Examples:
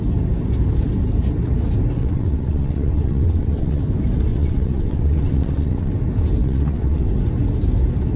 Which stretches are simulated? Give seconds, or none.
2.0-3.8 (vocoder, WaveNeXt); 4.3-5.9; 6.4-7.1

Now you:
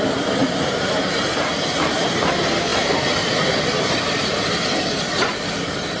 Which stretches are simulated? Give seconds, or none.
0.0-2.7 (vocoder, BigVGAN v2); 3.8-6.0

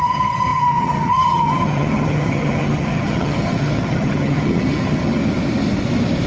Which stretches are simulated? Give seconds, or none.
0.0-5.2 (vocoder, HiFi-GAN)

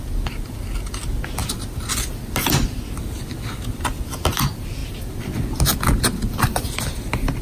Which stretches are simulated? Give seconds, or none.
none

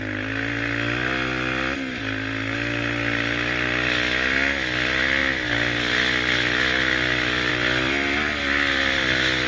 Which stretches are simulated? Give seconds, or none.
none

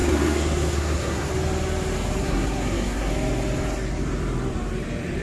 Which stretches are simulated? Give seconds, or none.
0.0-1.3 (codec, SNAC); 2.2-3.1

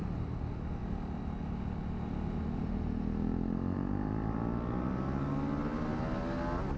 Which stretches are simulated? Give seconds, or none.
none